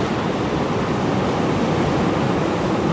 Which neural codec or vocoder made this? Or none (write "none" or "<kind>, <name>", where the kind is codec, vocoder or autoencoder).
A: none